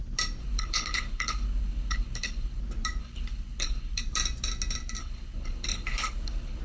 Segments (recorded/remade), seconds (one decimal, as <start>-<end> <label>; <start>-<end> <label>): 0.0-0.4 recorded; 0.4-2.6 remade; 2.6-3.0 recorded; 3.0-4.0 remade; 4.0-5.0 recorded; 5.0-6.6 remade